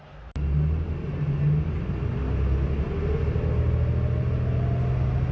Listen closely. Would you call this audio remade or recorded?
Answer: recorded